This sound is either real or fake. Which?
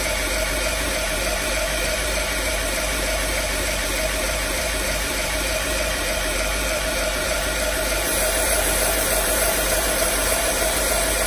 fake